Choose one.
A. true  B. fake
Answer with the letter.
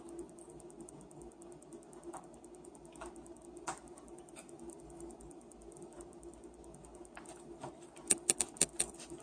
A